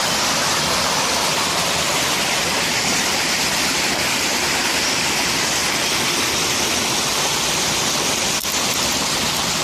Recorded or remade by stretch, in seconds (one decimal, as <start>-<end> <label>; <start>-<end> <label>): 0.0-1.9 remade; 1.9-5.6 recorded; 5.6-6.3 remade; 6.3-9.6 recorded